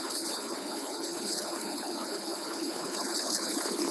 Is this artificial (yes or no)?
yes